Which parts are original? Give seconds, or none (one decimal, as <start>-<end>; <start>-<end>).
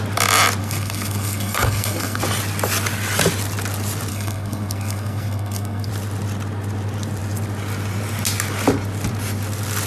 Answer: 0.0-0.6; 2.2-4.1; 5.9-9.9